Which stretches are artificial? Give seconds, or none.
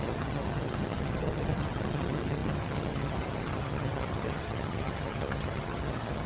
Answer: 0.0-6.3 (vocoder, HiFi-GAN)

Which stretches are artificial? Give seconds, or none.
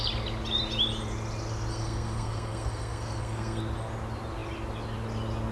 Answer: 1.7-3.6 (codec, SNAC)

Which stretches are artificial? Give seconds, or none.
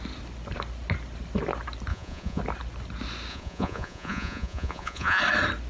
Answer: 1.9-2.4 (vocoder, Vocos); 3.3-5.2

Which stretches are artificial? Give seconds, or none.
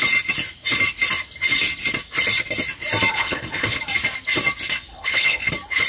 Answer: 3.1-3.8 (codec, HILCodec); 4.9-5.5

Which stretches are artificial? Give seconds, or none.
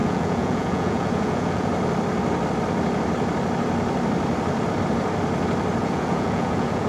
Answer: 0.0-1.7 (vocoder, Vocos); 5.8-6.9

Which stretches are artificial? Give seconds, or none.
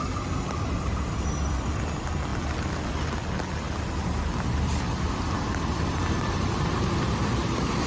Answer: none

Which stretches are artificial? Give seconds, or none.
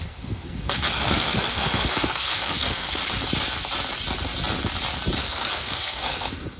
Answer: 0.0-3.0 (codec, SNAC); 5.2-6.6